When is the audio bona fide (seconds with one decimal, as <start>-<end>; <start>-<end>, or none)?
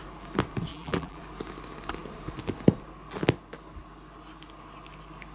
0.0-0.7; 1.2-5.3